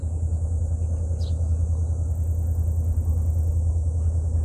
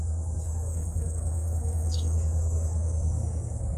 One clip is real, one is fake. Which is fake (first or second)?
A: second